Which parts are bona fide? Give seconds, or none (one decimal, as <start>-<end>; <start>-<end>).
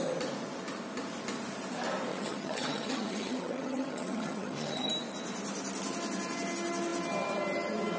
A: 0.0-2.1; 4.9-8.0